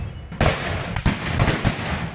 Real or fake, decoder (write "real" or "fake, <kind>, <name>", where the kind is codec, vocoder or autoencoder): real